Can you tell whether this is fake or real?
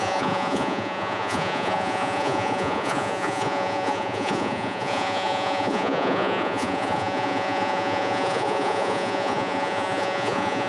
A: fake